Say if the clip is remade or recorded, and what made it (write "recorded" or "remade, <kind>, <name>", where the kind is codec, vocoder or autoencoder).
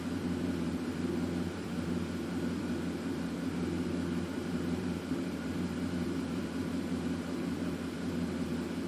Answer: remade, vocoder, BigVGAN v2